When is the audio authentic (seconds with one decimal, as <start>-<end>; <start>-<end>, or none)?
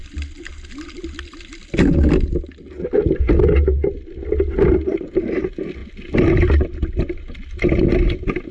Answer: 0.0-8.5